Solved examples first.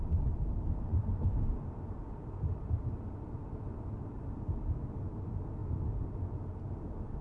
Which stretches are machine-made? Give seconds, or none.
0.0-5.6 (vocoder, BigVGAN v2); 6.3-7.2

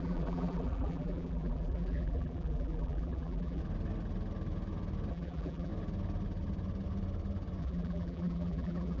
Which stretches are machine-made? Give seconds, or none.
0.0-3.6 (vocoder, BigVGAN v2); 5.1-5.7; 7.6-9.0

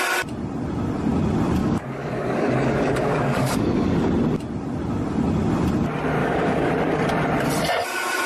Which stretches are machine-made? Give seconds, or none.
1.6-4.1 (codec, DAC); 6.2-6.7

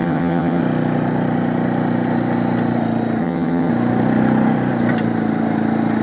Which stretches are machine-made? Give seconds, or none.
0.0-0.6 (vocoder, HiFi-GAN); 3.2-3.7

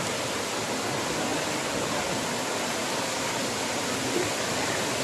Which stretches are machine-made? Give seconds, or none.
none